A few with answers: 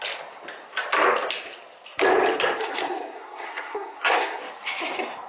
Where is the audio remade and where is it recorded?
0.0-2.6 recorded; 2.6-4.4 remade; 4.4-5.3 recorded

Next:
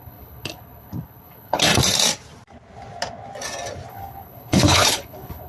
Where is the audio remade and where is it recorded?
0.0-1.7 remade; 1.7-3.9 recorded; 3.9-5.5 remade

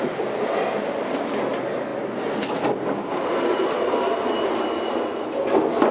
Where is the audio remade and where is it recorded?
0.0-5.9 recorded

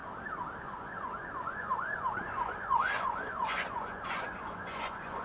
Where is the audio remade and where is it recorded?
0.0-0.6 recorded; 0.6-5.2 remade

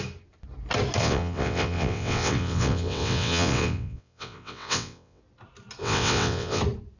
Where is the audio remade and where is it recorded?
0.0-1.0 recorded; 1.0-5.2 remade; 5.2-5.8 recorded; 5.8-6.6 remade; 6.6-7.0 recorded

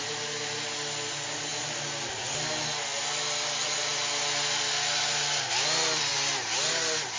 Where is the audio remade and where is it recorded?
0.0-7.2 recorded

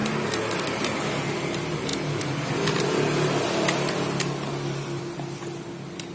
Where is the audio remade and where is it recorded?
0.0-6.1 recorded